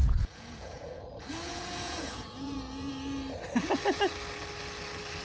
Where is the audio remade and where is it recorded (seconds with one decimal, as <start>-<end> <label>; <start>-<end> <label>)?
0.0-2.9 remade; 2.9-5.2 recorded